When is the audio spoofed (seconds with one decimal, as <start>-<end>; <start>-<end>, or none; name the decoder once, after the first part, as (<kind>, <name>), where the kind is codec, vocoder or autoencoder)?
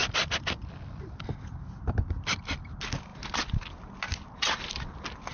none